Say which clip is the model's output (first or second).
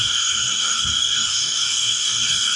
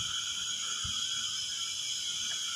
first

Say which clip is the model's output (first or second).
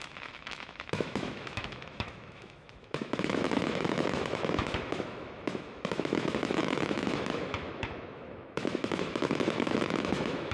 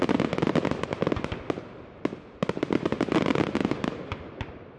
first